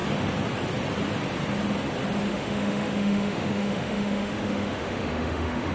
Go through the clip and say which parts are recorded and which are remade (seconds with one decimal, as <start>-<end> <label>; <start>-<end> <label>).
0.0-2.3 recorded; 2.3-5.7 remade